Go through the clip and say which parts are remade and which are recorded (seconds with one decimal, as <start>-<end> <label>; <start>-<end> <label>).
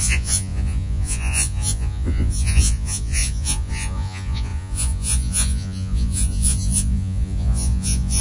0.0-8.2 remade